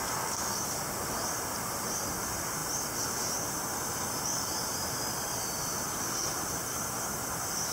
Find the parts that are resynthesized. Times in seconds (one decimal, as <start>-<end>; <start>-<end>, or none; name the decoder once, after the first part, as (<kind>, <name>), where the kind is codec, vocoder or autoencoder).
none